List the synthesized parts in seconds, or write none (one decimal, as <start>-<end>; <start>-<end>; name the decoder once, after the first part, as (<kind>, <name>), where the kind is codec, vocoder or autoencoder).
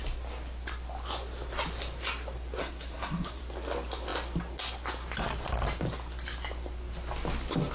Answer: 2.6-3.4 (codec, SNAC)